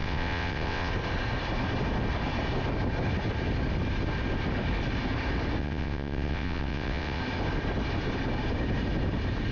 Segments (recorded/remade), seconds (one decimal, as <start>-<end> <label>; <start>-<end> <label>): 0.0-0.9 remade; 0.9-5.6 recorded; 5.6-7.2 remade; 7.2-9.5 recorded